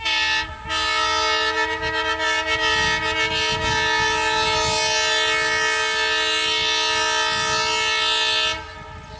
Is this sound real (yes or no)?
yes